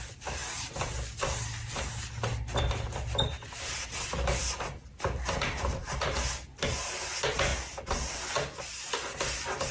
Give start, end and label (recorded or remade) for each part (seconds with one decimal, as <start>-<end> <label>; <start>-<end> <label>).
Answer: 0.0-9.7 recorded